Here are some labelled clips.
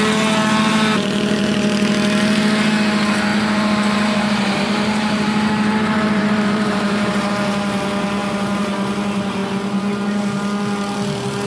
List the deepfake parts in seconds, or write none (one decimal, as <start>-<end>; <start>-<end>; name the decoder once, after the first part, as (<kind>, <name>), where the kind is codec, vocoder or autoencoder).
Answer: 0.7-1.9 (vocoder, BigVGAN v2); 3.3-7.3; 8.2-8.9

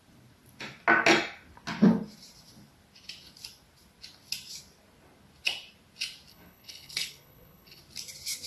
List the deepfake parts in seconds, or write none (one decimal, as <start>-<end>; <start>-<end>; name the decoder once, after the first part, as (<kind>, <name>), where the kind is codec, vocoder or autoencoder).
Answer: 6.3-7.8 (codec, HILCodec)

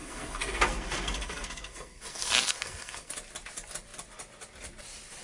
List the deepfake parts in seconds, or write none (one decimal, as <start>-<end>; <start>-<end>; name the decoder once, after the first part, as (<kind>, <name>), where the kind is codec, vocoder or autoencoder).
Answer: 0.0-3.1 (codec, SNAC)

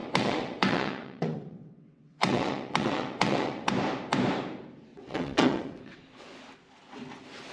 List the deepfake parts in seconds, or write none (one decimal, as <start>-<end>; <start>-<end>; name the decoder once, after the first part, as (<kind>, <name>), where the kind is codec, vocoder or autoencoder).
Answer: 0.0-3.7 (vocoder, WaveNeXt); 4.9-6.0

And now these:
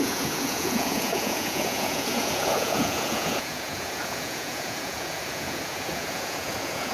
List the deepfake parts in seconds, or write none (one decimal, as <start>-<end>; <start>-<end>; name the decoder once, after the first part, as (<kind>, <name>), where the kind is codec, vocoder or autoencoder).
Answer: 0.0-6.9 (vocoder, Vocos)

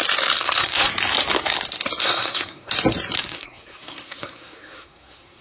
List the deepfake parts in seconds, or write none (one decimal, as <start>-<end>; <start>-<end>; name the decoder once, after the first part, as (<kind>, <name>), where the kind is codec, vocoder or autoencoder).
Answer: 0.4-0.9 (codec, SNAC); 2.0-2.7; 3.2-5.4

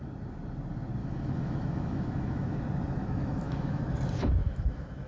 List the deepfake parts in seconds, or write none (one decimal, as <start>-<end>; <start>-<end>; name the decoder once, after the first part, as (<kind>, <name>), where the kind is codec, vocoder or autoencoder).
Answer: 1.0-2.6 (autoencoder, DAC-VAE); 3.0-3.8; 4.4-5.1